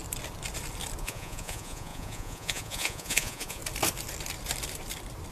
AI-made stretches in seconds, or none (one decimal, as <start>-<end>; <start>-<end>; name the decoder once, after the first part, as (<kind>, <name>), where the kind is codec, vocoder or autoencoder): 1.0-3.6 (vocoder, Vocos)